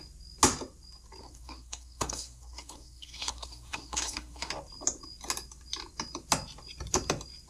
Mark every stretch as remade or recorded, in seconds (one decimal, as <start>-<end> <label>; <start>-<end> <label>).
0.0-1.2 recorded; 1.2-4.5 remade; 4.5-7.5 recorded

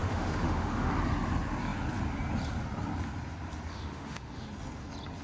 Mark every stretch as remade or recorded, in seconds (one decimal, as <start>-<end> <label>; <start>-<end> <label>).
0.0-0.9 remade; 0.9-3.7 recorded; 3.7-4.5 remade; 4.5-5.2 recorded

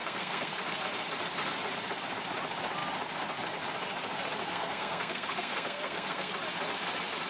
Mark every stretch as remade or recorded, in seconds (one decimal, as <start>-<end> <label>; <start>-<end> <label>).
0.0-0.5 remade; 0.5-4.4 recorded; 4.4-6.3 remade; 6.3-7.3 recorded

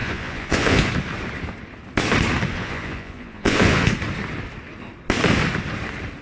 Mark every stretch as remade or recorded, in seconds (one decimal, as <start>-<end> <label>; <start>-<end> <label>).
0.0-0.9 remade; 0.9-2.5 recorded; 2.5-3.9 remade; 3.9-6.2 recorded

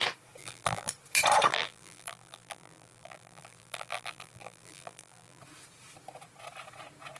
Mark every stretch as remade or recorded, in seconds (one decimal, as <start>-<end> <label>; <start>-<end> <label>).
0.0-0.4 recorded; 0.4-0.9 remade; 0.9-1.5 recorded; 1.5-5.4 remade; 5.4-7.2 recorded

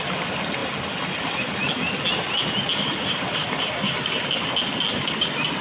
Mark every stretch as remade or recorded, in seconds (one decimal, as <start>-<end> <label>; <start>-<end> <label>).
0.0-5.6 recorded

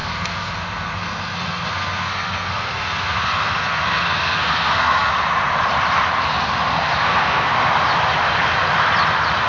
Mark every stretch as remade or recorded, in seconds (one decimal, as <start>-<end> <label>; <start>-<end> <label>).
0.0-5.1 remade; 5.1-7.0 recorded; 7.0-7.5 remade; 7.5-9.5 recorded

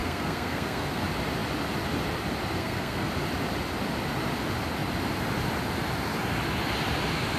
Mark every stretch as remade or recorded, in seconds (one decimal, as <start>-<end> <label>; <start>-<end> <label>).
0.0-1.0 remade; 1.0-2.6 recorded; 2.6-3.1 remade; 3.1-7.4 recorded